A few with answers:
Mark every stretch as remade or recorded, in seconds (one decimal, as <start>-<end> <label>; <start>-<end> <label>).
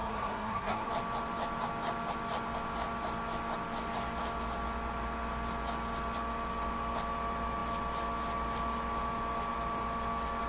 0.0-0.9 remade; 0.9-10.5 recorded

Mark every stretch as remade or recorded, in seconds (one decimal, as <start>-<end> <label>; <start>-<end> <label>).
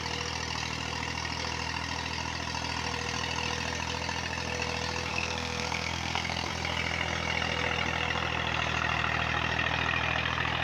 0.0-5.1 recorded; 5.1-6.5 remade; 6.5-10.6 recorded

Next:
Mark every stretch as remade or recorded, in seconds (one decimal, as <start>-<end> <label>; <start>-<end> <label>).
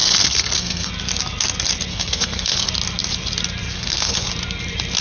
0.0-0.9 remade; 0.9-1.9 recorded; 1.9-2.7 remade; 2.7-3.7 recorded; 3.7-4.3 remade; 4.3-5.0 recorded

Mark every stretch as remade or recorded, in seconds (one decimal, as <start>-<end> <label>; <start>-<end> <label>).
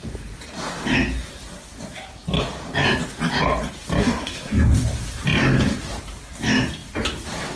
0.0-4.0 recorded; 4.0-4.5 remade; 4.5-7.6 recorded